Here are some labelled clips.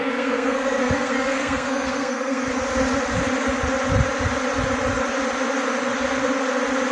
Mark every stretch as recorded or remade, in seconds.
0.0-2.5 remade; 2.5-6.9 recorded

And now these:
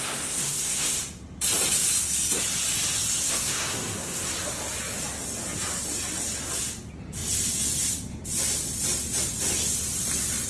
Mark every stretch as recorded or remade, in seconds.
0.0-1.0 remade; 1.0-3.2 recorded; 3.2-4.3 remade; 4.3-10.5 recorded

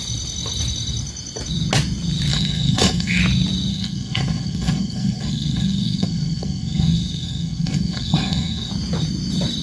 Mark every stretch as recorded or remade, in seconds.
0.0-2.3 recorded; 2.3-3.2 remade; 3.2-3.7 recorded; 3.7-8.7 remade; 8.7-9.6 recorded

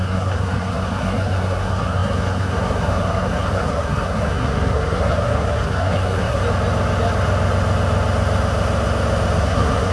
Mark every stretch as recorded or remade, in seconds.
0.0-6.4 remade; 6.4-9.4 recorded; 9.4-9.9 remade

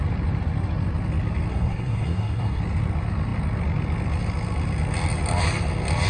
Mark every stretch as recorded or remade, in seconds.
0.0-1.5 recorded; 1.5-2.6 remade; 2.6-6.1 recorded

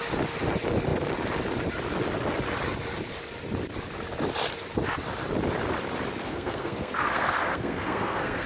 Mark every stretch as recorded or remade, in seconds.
0.0-6.2 recorded; 6.2-8.5 remade